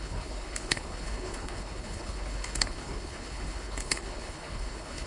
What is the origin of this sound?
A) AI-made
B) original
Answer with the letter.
A